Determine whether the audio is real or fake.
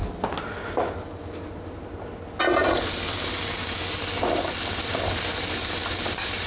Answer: real